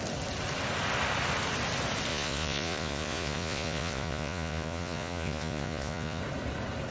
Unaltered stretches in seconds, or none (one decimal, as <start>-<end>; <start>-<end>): 0.0-2.1; 6.2-6.9